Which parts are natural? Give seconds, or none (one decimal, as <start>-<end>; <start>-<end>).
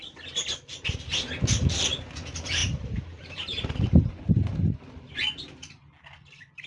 0.0-2.6; 4.1-6.7